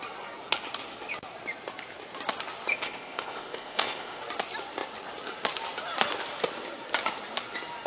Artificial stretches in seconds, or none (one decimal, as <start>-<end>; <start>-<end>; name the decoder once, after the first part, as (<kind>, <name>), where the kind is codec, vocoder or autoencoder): 2.7-4.2 (codec, ZipCodec)